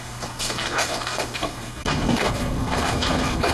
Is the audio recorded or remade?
remade